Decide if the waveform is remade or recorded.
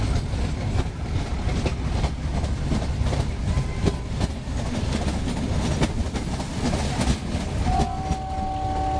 recorded